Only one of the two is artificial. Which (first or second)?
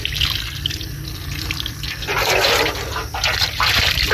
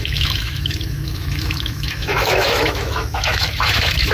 second